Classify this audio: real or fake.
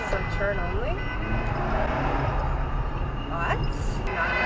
real